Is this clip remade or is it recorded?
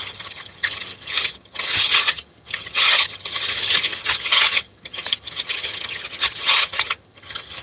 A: remade